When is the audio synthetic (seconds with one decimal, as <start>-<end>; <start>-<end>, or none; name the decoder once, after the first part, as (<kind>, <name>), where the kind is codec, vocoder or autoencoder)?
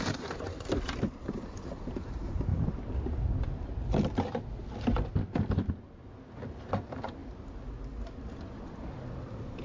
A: 0.0-2.5 (vocoder, BigVGAN v2); 6.7-7.2